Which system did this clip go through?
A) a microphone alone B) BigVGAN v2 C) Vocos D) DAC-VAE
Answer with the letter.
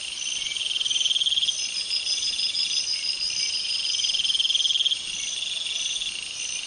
A